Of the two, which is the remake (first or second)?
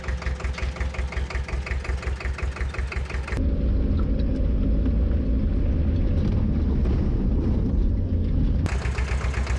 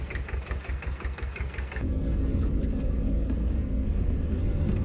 second